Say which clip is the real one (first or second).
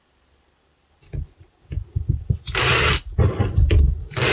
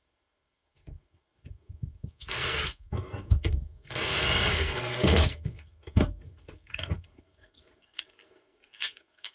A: first